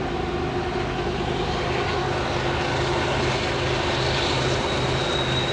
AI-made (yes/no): no